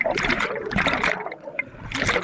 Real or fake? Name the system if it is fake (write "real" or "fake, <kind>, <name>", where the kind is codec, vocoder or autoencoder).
real